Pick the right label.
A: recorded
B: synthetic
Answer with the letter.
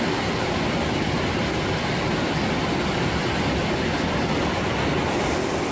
A